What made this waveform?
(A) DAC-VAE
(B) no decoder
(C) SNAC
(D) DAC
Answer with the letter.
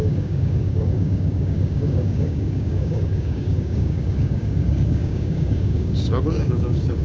D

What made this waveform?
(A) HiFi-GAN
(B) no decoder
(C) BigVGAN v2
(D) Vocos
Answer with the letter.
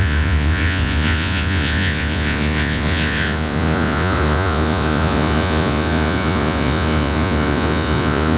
D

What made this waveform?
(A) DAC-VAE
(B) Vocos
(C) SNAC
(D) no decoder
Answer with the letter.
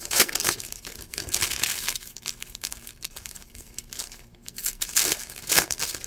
C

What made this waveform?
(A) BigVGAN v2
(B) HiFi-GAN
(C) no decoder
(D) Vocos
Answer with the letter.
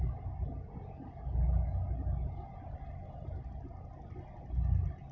C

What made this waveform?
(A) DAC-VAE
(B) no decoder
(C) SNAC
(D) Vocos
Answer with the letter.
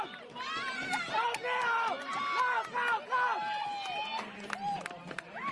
B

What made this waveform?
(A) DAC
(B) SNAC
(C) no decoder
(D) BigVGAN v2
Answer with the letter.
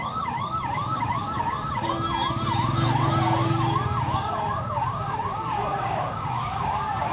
A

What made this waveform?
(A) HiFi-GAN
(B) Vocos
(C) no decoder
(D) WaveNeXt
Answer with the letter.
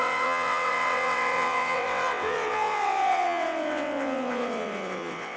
D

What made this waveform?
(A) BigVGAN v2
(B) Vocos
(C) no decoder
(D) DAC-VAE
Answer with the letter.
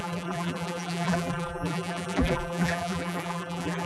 A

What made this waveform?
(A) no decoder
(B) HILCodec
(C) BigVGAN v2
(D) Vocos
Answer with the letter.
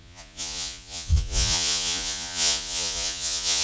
D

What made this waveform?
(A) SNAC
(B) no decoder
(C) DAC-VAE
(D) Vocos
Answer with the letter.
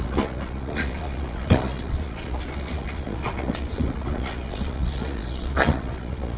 D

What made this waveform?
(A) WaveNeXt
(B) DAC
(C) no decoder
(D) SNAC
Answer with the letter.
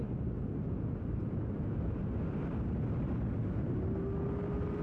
C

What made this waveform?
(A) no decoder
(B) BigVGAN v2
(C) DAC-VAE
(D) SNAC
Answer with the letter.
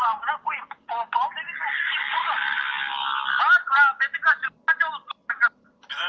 A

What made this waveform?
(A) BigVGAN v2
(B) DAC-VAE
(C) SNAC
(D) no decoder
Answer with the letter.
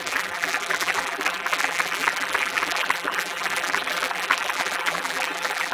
A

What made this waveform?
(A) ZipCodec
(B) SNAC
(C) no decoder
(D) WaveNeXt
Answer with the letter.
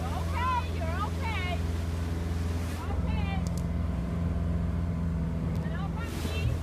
C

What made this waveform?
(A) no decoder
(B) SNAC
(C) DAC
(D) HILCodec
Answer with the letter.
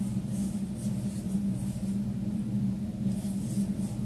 A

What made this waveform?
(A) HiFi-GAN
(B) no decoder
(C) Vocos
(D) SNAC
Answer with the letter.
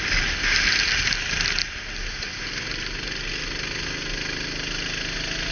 B